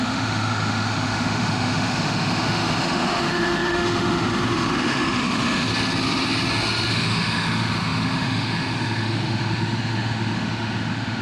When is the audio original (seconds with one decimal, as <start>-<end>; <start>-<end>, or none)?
5.7-6.9